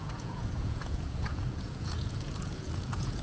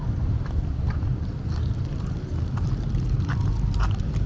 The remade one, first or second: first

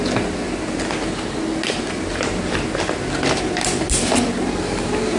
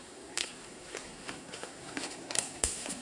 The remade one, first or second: second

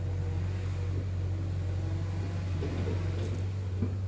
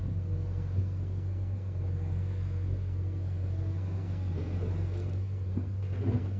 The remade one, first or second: second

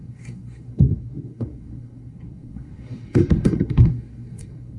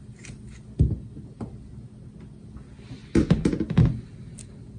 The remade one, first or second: first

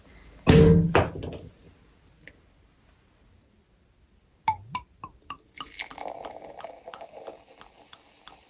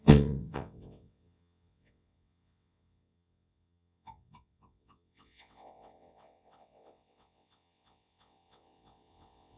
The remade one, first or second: second